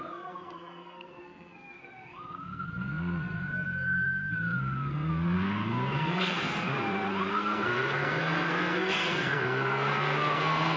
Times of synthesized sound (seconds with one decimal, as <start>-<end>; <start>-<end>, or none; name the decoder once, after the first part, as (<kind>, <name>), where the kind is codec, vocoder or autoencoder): 0.0-6.7 (codec, SNAC); 7.3-10.8